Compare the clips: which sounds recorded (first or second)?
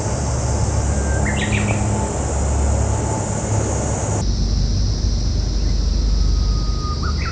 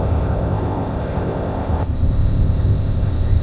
first